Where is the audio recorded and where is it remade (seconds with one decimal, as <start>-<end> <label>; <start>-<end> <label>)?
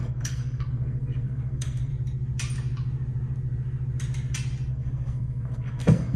0.0-1.9 remade; 1.9-4.7 recorded; 4.7-6.2 remade